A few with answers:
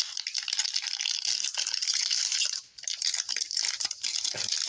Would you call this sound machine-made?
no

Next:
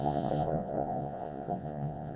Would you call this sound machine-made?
yes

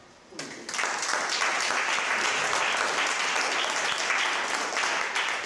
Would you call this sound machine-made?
no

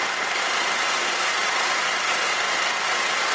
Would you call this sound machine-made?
no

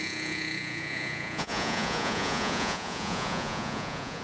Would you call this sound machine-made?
yes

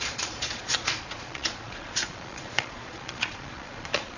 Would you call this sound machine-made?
yes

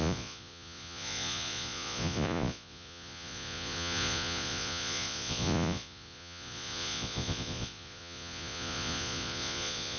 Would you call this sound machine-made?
yes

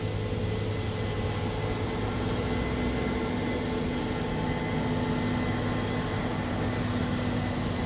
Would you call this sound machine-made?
no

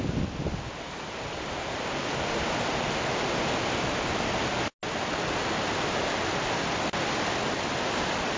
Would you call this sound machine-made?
no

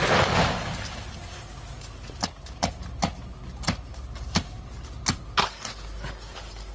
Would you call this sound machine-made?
no